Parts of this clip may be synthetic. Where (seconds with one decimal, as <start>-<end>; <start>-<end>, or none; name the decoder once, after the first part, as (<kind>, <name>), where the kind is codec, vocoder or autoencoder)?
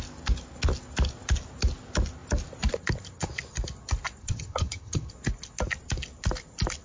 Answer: 4.2-5.1 (vocoder, HiFi-GAN)